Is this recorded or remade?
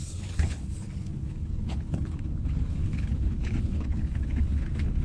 remade